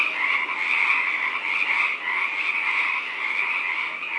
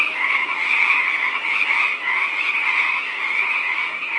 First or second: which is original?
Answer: first